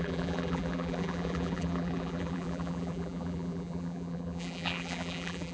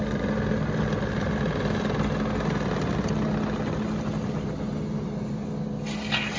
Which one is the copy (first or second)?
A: first